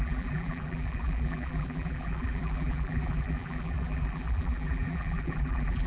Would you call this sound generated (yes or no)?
yes